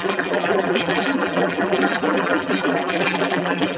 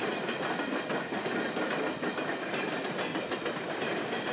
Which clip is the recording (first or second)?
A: second